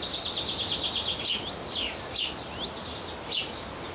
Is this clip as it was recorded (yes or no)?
yes